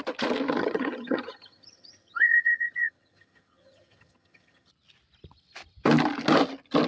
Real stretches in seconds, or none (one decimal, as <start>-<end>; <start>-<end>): 0.0-0.6; 4.7-6.9

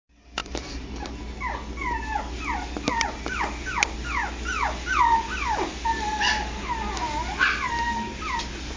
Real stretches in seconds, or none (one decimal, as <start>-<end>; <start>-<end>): 0.0-8.8

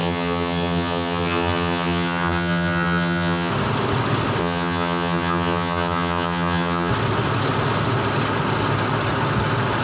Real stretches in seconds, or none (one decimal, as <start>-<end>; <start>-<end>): 3.5-4.4; 6.9-9.8

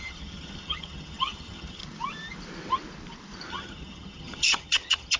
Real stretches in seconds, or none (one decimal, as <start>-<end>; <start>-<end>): 1.8-3.5

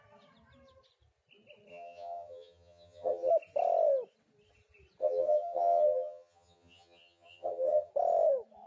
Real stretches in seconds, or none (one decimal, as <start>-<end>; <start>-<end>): 0.0-1.7; 3.3-5.0; 7.9-8.7